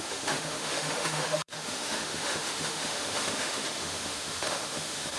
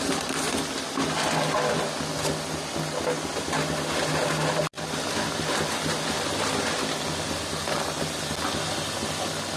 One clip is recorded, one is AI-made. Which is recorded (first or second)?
second